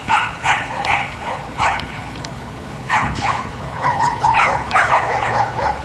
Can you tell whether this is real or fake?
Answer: fake